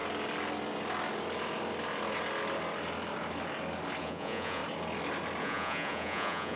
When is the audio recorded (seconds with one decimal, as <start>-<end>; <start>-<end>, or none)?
0.0-4.0; 4.6-5.4